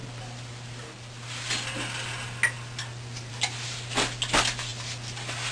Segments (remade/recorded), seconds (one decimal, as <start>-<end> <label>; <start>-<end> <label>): 0.0-5.5 recorded